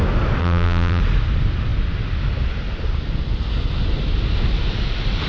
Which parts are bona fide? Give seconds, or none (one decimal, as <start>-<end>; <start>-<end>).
0.0-0.4; 1.0-5.3